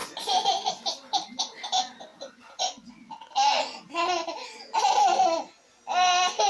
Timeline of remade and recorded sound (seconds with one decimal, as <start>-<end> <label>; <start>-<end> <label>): 0.0-0.7 remade; 0.7-2.1 recorded; 2.1-2.9 remade; 2.9-6.5 recorded